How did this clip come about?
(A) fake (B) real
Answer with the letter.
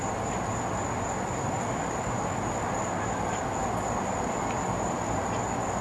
B